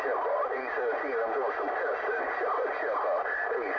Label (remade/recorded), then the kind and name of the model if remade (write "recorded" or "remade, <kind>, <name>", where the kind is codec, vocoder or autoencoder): recorded